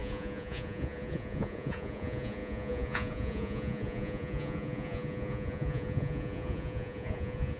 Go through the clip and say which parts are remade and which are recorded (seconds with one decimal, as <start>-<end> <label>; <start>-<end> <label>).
0.0-7.6 remade